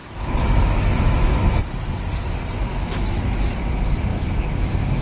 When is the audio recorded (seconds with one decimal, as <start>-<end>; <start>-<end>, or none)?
1.6-2.7; 3.6-5.0